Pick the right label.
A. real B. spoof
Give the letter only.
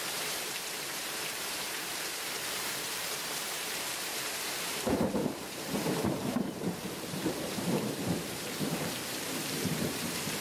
B